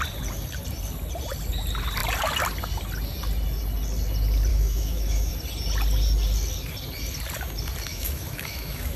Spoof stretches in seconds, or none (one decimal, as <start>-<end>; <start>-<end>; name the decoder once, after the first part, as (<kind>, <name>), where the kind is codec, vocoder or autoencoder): 4.5-5.3 (autoencoder, DAC-VAE); 7.9-9.0